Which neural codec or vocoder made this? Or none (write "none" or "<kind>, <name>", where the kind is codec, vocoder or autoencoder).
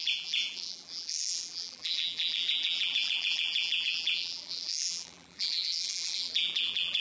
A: vocoder, BigVGAN v2